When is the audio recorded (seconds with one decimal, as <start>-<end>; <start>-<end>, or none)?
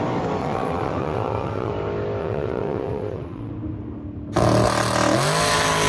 0.0-0.4; 1.7-2.2; 3.5-5.9